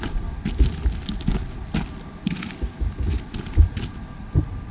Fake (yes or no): no